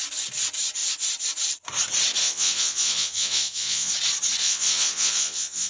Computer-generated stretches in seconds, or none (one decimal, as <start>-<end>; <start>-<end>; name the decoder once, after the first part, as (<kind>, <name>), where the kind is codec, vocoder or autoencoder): 2.2-3.9 (vocoder, Vocos); 4.4-5.7